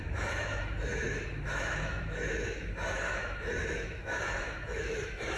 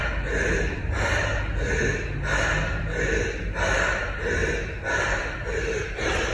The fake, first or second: first